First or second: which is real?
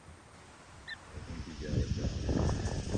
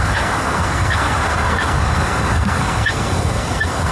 first